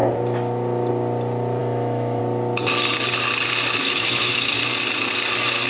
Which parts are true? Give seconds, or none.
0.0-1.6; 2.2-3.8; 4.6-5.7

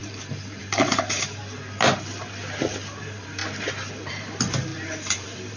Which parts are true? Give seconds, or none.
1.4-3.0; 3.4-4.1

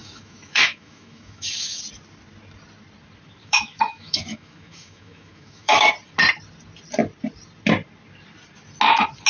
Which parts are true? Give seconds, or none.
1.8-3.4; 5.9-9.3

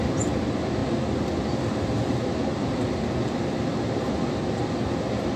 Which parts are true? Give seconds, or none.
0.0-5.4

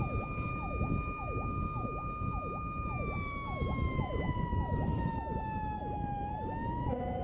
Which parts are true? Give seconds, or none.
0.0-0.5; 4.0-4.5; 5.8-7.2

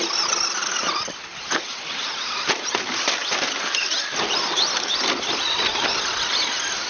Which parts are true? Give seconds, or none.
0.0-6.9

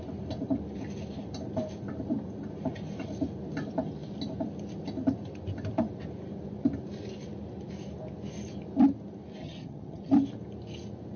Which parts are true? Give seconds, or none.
0.0-9.4; 10.1-11.2

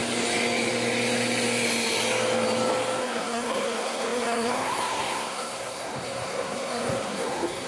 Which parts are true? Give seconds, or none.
0.0-3.0